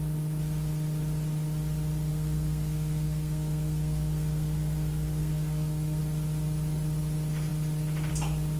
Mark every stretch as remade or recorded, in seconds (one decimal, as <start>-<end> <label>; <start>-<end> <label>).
0.0-2.1 recorded; 2.1-6.0 remade; 6.0-8.6 recorded